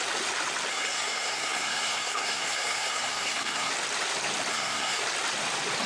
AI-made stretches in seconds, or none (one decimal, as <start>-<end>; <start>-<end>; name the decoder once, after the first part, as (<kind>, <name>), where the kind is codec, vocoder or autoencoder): 0.7-3.7 (codec, SNAC); 4.5-5.0